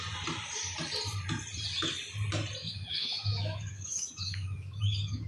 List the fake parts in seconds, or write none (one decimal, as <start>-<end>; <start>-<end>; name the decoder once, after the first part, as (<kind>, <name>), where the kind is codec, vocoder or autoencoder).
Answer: 2.6-5.3 (autoencoder, DAC-VAE)